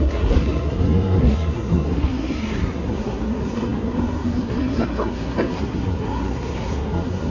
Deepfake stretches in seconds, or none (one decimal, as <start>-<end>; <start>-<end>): 0.0-7.3